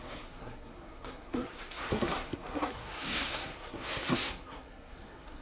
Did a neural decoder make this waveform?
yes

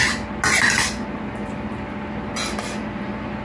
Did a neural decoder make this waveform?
no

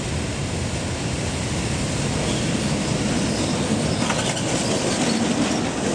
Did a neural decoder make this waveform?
no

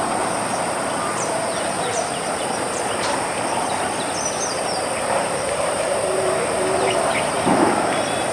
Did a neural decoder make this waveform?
yes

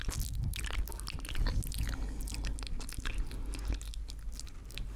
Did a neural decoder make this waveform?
no